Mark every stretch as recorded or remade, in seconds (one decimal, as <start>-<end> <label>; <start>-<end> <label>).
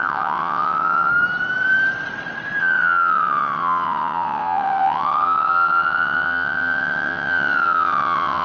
0.0-1.1 remade; 1.1-2.6 recorded; 2.6-8.4 remade